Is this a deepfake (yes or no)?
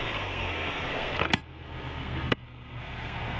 yes